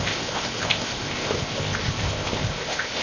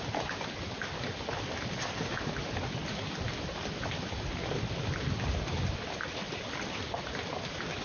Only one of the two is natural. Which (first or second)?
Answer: second